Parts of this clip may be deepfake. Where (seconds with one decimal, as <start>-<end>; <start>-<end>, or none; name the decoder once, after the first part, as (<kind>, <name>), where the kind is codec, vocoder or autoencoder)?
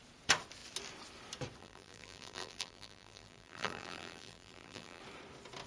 1.6-5.0 (vocoder, BigVGAN v2)